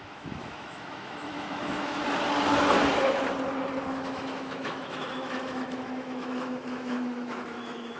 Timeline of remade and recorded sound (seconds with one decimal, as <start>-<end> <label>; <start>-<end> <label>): 0.0-2.0 remade; 2.0-3.8 recorded; 3.8-8.0 remade